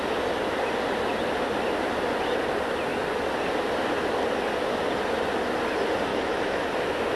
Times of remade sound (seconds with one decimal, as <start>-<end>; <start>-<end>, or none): 6.1-6.7

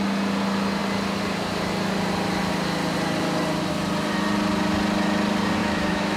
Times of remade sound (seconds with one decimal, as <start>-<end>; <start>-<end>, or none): 5.6-6.2